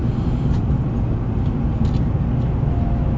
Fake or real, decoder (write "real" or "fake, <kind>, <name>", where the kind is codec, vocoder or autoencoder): real